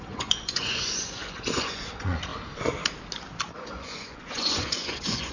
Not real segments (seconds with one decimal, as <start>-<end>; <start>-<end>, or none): 0.0-2.3; 3.6-5.3